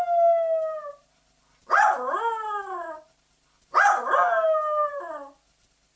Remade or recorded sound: recorded